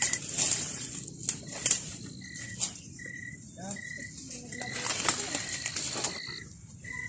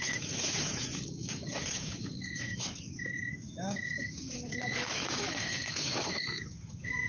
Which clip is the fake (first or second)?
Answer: second